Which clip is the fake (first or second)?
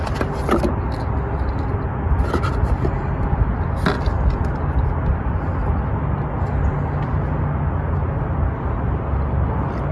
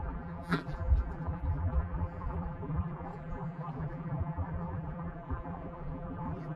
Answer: second